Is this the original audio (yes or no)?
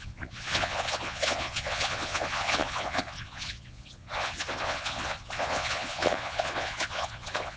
no